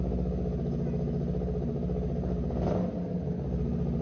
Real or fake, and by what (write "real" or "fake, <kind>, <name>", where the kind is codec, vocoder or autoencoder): real